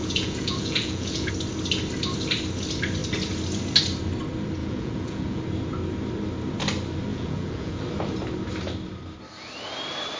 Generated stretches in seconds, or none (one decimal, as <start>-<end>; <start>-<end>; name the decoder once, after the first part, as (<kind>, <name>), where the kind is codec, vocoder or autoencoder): 0.0-1.3 (vocoder, Vocos); 4.6-5.4; 7.1-7.8